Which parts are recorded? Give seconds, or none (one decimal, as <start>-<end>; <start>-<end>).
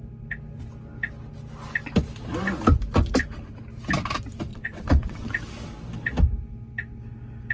0.0-4.5; 5.3-7.5